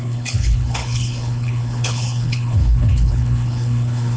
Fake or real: fake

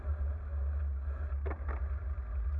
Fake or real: real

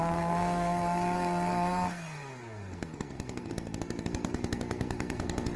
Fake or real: fake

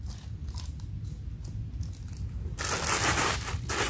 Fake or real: real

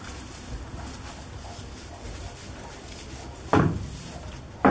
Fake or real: real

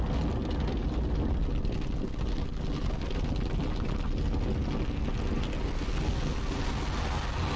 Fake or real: real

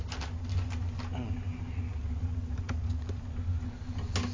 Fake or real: real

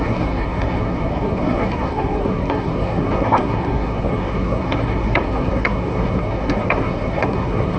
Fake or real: fake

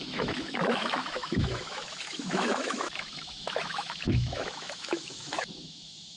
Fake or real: fake